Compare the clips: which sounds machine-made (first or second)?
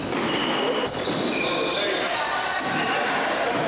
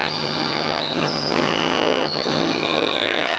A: second